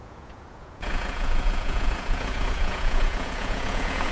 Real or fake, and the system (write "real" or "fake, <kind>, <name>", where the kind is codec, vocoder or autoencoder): fake, vocoder, Vocos